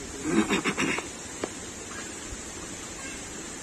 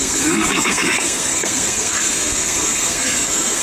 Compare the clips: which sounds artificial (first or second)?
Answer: second